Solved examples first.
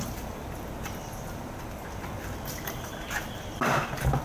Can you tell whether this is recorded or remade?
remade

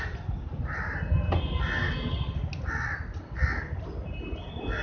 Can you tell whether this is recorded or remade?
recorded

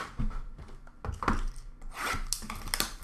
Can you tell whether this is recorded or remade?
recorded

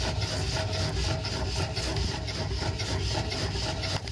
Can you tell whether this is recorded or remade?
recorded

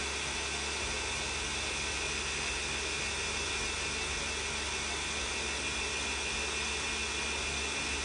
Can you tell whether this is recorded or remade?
recorded